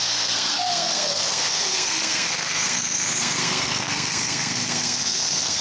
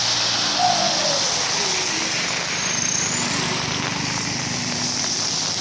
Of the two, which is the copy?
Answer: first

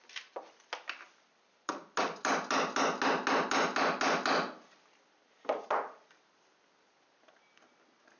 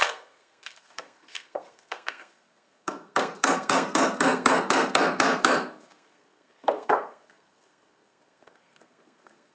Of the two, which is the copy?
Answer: second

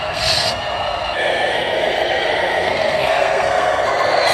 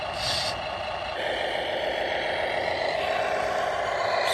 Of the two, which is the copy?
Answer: first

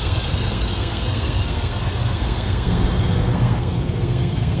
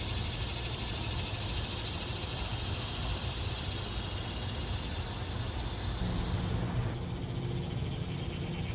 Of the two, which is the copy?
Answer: first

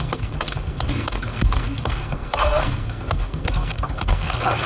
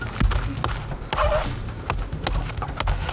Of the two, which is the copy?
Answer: first